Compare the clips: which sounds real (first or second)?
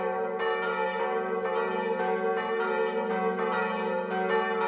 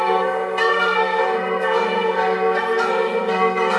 first